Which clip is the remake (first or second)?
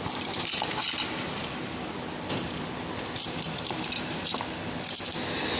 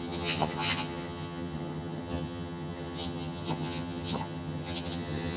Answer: second